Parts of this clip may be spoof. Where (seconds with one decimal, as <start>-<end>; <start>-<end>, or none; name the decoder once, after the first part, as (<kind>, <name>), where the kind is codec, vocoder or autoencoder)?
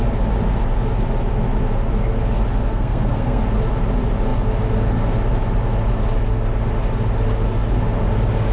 2.7-3.4 (codec, SNAC)